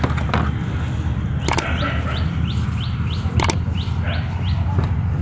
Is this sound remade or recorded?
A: recorded